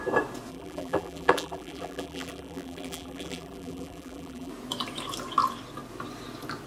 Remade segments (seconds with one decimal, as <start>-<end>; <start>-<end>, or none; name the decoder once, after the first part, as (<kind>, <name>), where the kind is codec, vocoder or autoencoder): 0.5-4.5 (vocoder, BigVGAN v2)